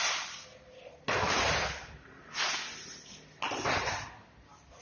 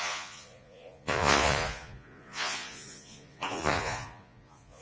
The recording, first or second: first